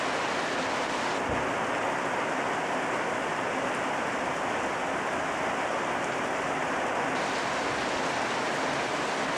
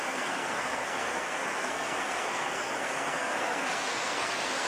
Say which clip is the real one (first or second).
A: first